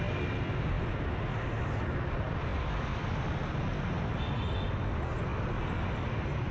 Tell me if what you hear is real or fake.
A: real